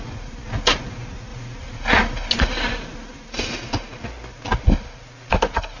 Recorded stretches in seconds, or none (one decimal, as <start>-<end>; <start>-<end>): 0.0-5.8